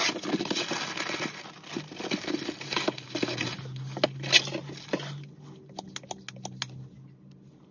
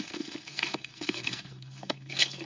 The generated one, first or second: second